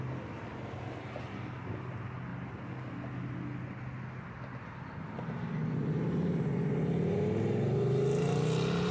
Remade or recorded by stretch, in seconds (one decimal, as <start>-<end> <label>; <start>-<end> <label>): 0.0-8.9 recorded